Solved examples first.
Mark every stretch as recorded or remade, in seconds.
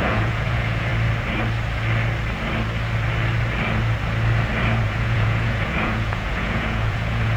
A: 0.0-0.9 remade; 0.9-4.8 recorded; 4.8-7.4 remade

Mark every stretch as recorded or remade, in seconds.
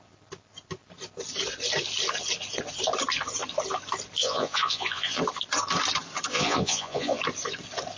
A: 0.0-4.2 recorded; 4.2-5.2 remade; 5.2-6.3 recorded; 6.3-7.2 remade; 7.2-8.0 recorded